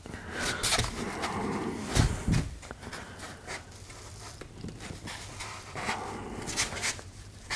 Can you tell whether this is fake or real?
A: real